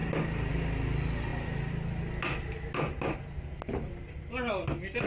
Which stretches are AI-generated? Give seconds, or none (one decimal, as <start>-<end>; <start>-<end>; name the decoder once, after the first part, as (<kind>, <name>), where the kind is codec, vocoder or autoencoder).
none